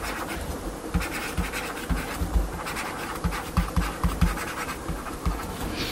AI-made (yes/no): yes